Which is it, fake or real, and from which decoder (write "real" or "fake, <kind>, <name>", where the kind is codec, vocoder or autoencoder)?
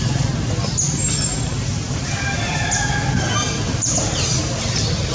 real